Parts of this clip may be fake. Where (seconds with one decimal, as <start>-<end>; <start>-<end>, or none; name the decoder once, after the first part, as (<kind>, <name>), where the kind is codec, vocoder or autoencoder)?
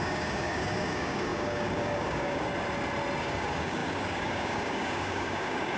0.0-2.5 (codec, DAC); 3.2-5.8